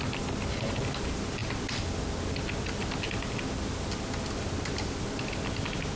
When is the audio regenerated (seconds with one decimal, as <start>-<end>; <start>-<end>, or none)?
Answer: none